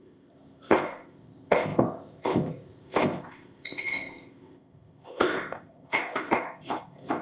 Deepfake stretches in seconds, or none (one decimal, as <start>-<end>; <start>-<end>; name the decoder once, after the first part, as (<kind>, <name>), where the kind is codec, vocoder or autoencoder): 0.0-7.2 (codec, ZipCodec)